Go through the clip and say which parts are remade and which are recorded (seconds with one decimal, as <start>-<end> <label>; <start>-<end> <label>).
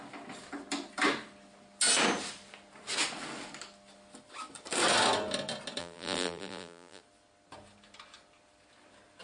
0.0-5.8 recorded; 5.8-7.0 remade; 7.0-9.2 recorded